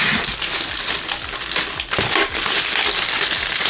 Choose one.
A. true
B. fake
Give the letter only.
A